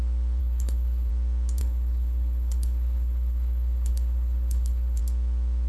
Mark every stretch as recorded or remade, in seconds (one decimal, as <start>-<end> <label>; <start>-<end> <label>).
0.0-0.4 recorded; 0.4-1.1 remade; 1.1-1.6 recorded; 1.6-5.0 remade; 5.0-5.7 recorded